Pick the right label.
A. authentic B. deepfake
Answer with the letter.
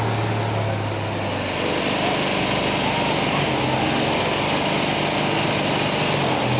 A